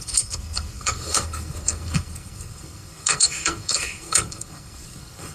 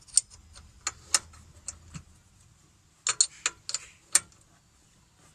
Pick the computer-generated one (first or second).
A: first